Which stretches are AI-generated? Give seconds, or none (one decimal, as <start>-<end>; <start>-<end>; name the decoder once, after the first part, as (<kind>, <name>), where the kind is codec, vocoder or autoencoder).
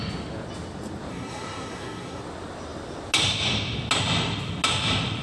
1.1-2.2 (codec, SNAC)